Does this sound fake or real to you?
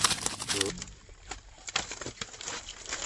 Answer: real